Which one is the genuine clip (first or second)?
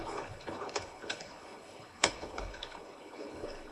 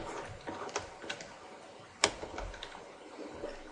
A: second